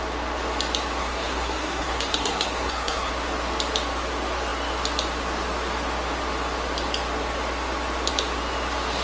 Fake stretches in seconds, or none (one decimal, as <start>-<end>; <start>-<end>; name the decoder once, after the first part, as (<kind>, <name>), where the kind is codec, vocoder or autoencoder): 1.0-3.1 (codec, SNAC)